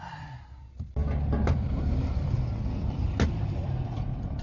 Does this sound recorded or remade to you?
recorded